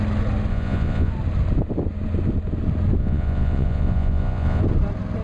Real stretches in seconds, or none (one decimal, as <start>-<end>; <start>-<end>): 0.0-0.5; 1.1-3.0; 4.6-5.2